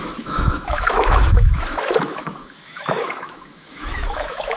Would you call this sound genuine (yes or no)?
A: no